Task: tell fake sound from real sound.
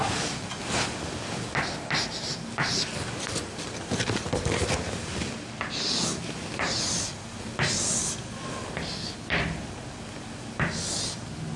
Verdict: real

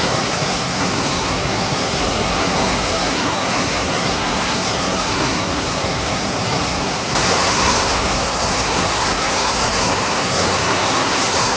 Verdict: fake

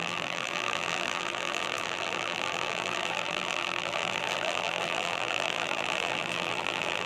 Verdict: fake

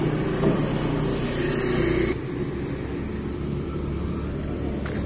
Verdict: real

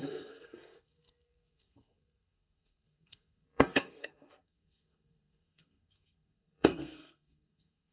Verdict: fake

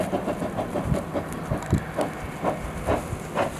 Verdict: real